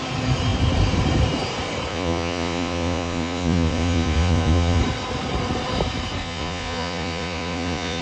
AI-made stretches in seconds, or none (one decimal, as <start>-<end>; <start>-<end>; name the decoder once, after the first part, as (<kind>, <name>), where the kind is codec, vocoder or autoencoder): 1.9-4.8 (vocoder, Vocos); 6.2-8.0

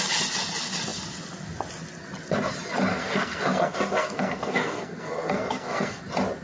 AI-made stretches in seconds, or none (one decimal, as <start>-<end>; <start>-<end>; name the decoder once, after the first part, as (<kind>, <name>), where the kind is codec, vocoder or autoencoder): 2.9-6.0 (codec, SNAC)

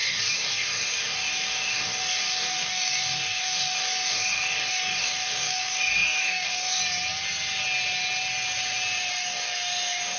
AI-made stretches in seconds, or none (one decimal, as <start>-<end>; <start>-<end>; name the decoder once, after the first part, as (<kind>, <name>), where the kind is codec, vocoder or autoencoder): 0.0-6.8 (codec, DAC); 9.1-10.2

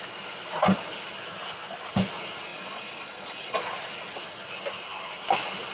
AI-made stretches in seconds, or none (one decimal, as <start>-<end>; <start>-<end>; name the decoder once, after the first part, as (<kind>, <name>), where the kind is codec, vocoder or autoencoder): 2.5-3.6 (vocoder, Vocos)

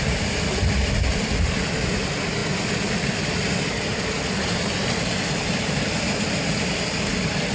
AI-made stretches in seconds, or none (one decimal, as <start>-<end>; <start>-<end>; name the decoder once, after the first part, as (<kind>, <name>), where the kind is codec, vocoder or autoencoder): none

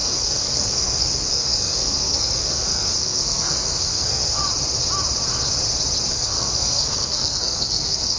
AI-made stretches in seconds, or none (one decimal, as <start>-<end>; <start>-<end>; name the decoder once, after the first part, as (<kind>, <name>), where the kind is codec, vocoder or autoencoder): 0.0-4.4 (codec, SNAC); 6.1-8.2

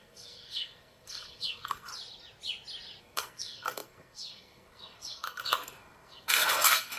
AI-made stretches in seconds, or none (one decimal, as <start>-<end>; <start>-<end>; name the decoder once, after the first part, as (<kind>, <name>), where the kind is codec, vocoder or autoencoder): 0.0-1.9 (codec, SNAC); 3.0-7.0